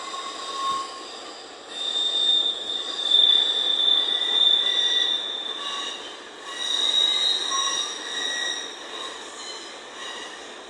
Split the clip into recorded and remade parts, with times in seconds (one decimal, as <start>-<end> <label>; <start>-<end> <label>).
0.0-2.3 recorded; 2.3-5.2 remade; 5.2-10.7 recorded

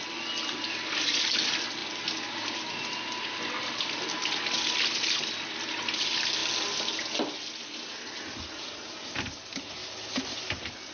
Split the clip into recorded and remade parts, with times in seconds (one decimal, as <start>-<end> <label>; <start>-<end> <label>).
0.0-9.8 recorded; 9.8-10.5 remade; 10.5-10.9 recorded

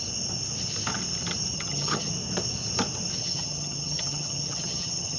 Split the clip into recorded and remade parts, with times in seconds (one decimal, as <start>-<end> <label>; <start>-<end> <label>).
0.0-1.5 recorded; 1.5-2.1 remade; 2.1-3.2 recorded; 3.2-5.2 remade

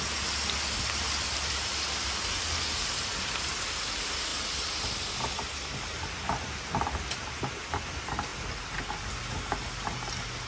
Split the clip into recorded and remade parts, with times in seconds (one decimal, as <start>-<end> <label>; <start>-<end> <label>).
0.0-10.5 recorded

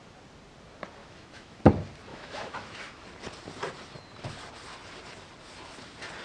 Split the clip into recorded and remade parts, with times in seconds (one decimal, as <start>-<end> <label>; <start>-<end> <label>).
0.0-1.0 recorded; 1.0-1.6 remade; 1.6-2.1 recorded; 2.1-3.0 remade; 3.0-6.2 recorded

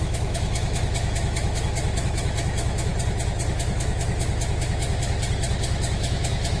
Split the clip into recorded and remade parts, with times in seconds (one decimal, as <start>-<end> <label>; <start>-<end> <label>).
0.0-2.9 remade; 2.9-3.5 recorded; 3.5-6.6 remade